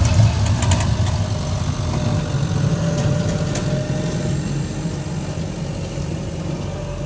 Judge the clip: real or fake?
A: real